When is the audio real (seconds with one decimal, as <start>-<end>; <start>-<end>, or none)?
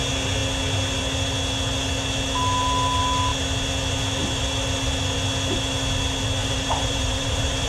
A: 0.0-6.4